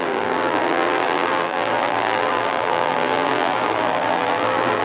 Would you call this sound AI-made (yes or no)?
yes